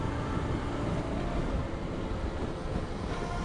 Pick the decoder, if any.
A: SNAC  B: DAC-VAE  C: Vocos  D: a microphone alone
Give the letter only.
D